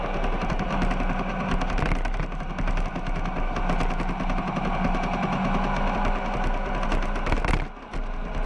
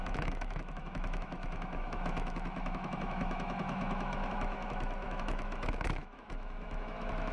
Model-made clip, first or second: second